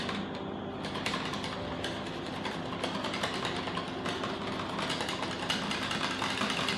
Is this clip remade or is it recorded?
recorded